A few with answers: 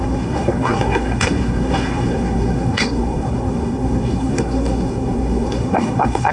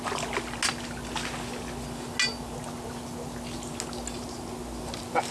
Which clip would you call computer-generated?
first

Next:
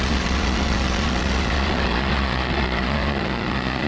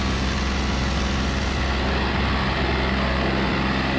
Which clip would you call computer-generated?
first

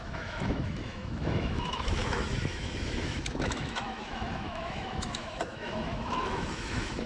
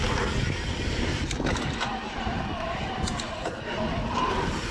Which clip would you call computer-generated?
first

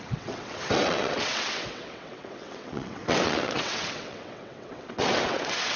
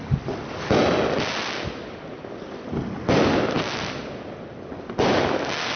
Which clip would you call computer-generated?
first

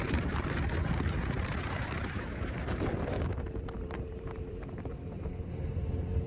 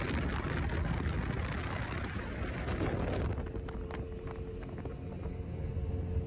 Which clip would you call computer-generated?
first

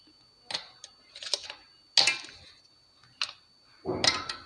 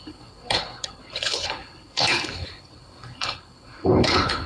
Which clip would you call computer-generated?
second